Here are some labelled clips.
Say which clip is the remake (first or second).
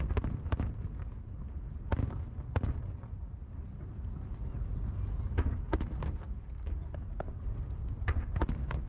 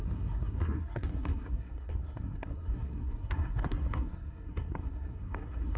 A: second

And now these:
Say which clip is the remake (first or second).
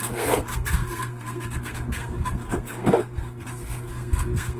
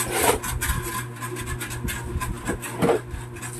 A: first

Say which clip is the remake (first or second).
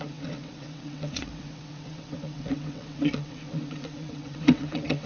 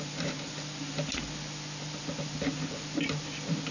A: first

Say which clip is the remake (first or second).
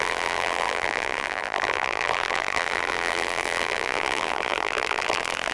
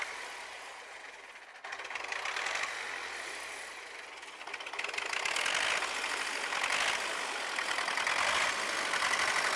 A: first